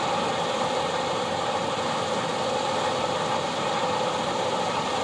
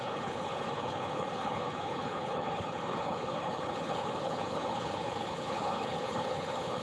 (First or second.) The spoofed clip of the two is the second